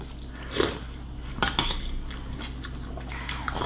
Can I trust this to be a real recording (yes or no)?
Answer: yes